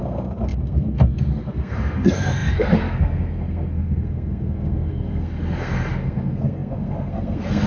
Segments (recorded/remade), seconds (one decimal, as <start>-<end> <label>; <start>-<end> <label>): 0.0-7.7 remade